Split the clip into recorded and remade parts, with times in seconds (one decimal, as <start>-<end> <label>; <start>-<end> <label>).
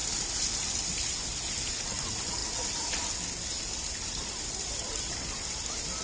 0.0-0.7 recorded; 0.7-2.4 remade; 2.4-3.6 recorded; 3.6-6.0 remade